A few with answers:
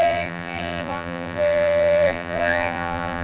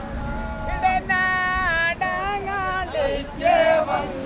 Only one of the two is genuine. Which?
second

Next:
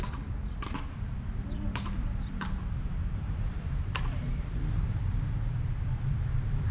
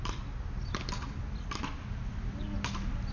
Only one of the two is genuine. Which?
second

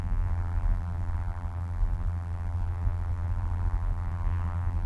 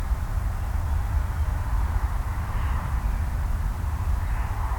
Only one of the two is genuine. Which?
second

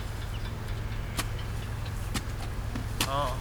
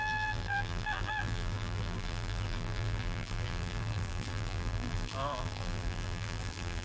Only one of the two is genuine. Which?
first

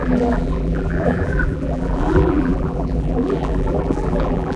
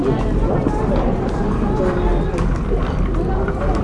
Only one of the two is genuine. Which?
second